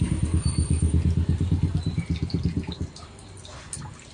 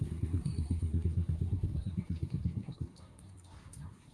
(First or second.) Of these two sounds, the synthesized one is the second